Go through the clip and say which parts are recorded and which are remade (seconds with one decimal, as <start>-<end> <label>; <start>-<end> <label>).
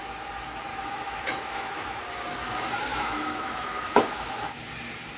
0.0-0.7 recorded; 0.7-2.0 remade; 2.0-2.9 recorded; 2.9-4.6 remade; 4.6-5.2 recorded